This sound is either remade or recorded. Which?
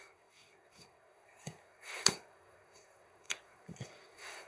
remade